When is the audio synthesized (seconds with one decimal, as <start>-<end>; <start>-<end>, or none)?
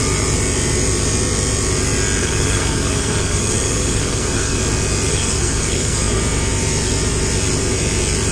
2.2-4.6; 5.1-6.2